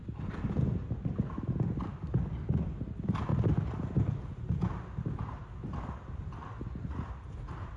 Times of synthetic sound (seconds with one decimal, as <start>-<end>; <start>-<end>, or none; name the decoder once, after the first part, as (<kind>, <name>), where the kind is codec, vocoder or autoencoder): none